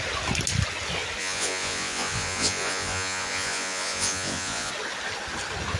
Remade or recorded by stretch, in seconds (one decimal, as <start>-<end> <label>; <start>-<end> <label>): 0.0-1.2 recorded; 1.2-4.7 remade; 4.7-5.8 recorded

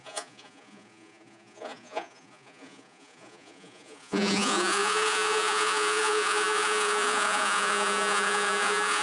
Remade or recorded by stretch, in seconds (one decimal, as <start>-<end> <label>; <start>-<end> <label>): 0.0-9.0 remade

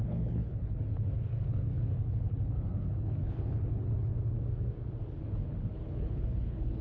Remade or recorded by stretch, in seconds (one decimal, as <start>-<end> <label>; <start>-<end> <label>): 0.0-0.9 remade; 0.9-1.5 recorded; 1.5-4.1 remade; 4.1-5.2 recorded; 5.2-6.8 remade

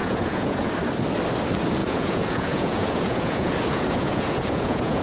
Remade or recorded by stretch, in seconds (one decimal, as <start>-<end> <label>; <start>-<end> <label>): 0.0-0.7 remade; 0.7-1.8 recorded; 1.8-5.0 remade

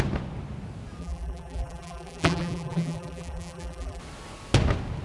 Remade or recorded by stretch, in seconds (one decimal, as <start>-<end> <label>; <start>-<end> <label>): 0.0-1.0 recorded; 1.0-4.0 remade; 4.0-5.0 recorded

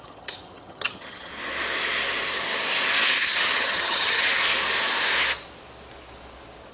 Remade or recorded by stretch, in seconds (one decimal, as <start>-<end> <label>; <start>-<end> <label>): 0.0-1.3 remade; 1.3-3.3 recorded; 3.3-4.3 remade; 4.3-6.7 recorded

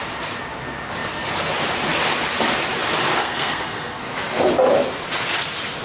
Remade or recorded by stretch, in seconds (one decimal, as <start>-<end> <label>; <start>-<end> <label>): 0.0-3.2 recorded; 3.2-4.0 remade; 4.0-5.8 recorded